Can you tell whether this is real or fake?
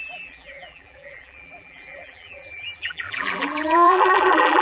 fake